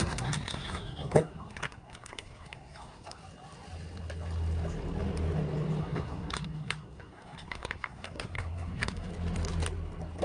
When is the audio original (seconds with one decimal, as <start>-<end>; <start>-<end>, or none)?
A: 3.2-5.8; 9.1-10.2